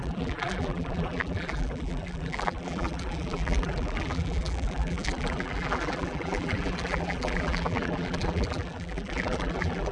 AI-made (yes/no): yes